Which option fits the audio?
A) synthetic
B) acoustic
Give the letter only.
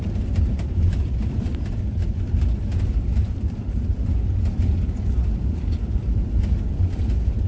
A